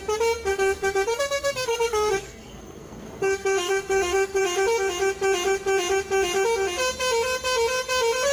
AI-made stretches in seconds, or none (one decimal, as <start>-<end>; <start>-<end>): 0.5-4.4